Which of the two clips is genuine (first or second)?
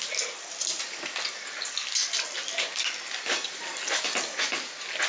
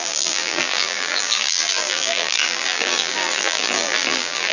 first